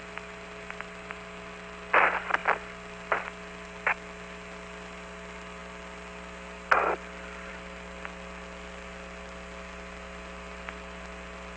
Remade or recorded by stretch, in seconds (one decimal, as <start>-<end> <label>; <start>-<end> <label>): 0.0-11.6 recorded